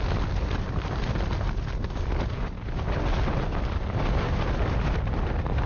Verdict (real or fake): real